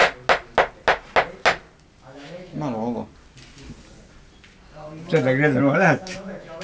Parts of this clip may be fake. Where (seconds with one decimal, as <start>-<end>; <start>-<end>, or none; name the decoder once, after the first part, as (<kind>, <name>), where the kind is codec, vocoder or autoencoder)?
2.0-2.5 (autoencoder, DAC-VAE); 5.6-6.6